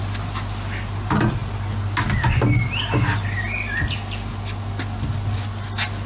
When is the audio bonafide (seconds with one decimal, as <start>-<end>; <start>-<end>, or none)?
0.0-6.1